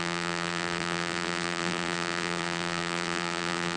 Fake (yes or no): yes